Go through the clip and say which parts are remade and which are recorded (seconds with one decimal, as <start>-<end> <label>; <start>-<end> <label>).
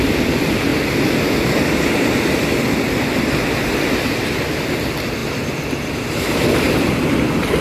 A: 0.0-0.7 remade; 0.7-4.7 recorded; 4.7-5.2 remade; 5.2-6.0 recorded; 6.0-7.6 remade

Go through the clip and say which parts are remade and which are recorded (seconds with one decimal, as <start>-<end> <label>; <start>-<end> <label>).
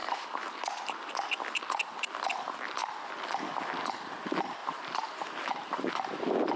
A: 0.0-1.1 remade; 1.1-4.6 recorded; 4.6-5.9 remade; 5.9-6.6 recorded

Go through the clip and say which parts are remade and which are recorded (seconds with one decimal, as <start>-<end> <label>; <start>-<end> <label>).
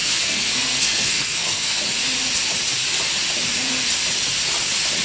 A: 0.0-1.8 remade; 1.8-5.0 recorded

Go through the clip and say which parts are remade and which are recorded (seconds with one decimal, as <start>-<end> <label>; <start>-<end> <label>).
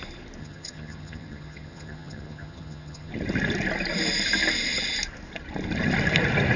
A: 0.0-0.4 recorded; 0.4-3.1 remade; 3.1-6.6 recorded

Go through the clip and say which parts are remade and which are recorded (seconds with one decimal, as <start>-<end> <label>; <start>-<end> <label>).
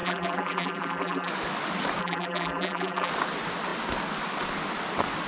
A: 0.0-1.3 remade; 1.3-2.0 recorded; 2.0-3.1 remade; 3.1-5.3 recorded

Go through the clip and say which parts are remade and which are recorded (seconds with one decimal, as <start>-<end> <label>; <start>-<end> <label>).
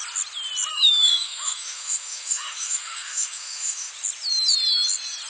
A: 0.0-0.7 recorded; 0.7-3.9 remade; 3.9-5.3 recorded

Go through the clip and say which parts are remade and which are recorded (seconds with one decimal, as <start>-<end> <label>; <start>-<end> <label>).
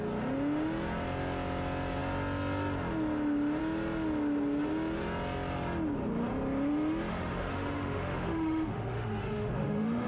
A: 0.0-7.1 recorded; 7.1-10.1 remade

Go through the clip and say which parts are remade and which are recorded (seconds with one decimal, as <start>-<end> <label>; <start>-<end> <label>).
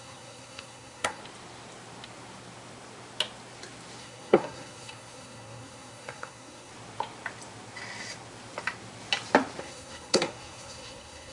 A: 0.0-1.2 remade; 1.2-4.0 recorded; 4.0-6.7 remade; 6.7-9.6 recorded; 9.6-11.3 remade